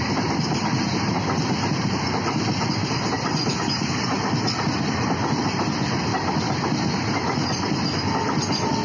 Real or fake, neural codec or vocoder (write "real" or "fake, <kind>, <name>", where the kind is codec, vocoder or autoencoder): real